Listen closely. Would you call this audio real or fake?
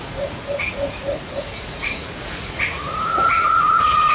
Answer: fake